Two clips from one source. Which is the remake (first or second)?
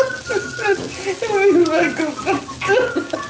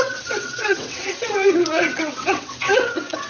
second